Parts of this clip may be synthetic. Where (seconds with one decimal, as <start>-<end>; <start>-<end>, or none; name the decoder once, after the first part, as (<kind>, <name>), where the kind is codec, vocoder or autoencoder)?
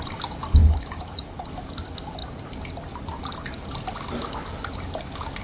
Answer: 0.6-1.5 (autoencoder, DAC-VAE)